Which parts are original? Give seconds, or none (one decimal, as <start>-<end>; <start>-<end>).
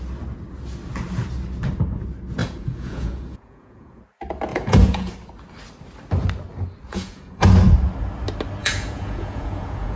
0.0-2.4; 4.0-4.5; 5.1-6.9; 7.5-8.6